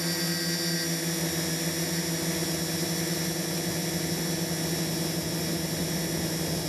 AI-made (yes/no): no